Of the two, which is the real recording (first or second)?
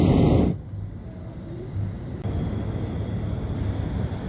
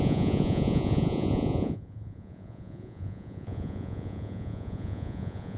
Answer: first